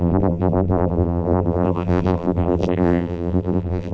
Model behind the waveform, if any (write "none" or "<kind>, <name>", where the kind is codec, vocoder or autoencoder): vocoder, BigVGAN v2